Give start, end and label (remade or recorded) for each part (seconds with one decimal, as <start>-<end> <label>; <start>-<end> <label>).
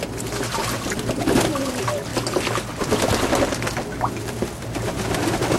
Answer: 0.0-5.6 recorded